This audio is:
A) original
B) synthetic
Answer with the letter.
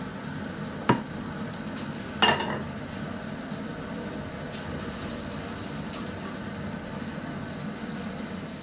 A